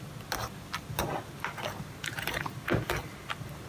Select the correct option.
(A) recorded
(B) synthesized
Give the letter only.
A